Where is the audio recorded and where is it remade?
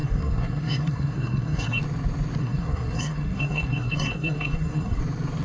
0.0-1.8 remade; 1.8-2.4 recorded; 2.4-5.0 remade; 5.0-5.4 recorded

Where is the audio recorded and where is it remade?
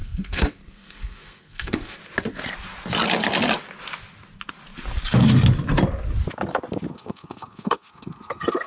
0.0-2.0 remade; 2.0-6.9 recorded; 6.9-8.7 remade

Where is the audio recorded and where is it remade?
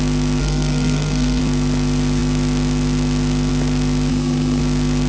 0.0-0.4 recorded; 0.4-1.4 remade; 1.4-4.1 recorded; 4.1-4.6 remade; 4.6-5.1 recorded